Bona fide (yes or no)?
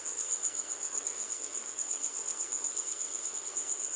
no